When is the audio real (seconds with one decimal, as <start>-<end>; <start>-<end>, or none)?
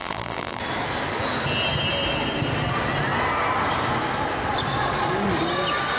0.6-6.0